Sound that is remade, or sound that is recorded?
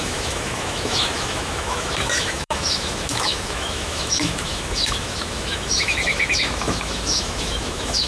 remade